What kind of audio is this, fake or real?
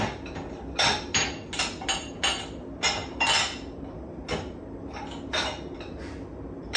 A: real